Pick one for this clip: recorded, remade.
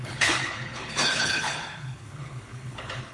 remade